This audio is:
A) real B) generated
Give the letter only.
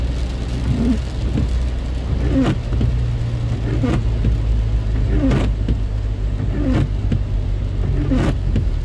A